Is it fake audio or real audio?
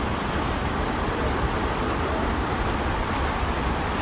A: real